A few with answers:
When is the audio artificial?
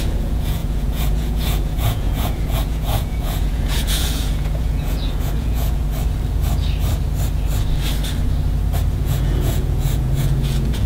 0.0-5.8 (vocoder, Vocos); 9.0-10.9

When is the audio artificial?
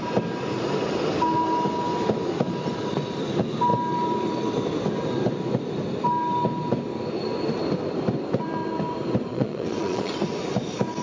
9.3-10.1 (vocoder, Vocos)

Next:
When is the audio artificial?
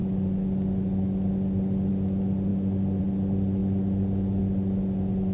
none